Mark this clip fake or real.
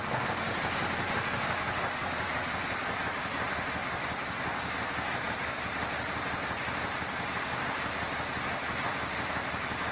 real